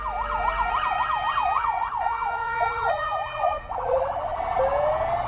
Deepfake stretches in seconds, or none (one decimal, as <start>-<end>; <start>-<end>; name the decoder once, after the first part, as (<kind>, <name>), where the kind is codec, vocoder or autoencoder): 1.6-4.1 (vocoder, Vocos)